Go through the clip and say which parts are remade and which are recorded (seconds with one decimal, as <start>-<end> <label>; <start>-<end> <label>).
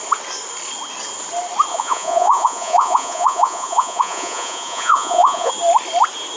0.0-1.7 recorded; 1.7-5.5 remade; 5.5-6.4 recorded